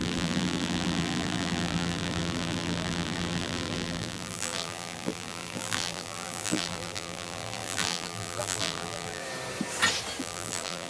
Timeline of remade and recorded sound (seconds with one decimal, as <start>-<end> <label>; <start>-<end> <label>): 0.0-9.2 remade; 9.2-10.2 recorded; 10.2-10.9 remade